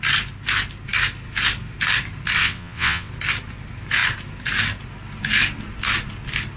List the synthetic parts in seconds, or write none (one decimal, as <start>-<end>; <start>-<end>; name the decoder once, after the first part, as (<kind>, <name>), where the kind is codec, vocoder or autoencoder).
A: 2.4-3.1 (vocoder, WaveNeXt)